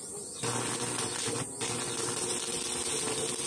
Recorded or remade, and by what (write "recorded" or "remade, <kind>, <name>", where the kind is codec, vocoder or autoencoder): recorded